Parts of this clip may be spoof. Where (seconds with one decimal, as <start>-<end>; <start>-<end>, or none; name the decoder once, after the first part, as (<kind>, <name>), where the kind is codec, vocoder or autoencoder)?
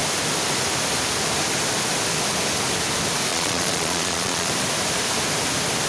3.3-4.5 (vocoder, Vocos)